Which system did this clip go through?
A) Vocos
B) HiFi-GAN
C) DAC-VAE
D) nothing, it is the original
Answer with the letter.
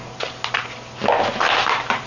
D